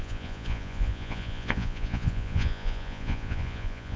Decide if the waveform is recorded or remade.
remade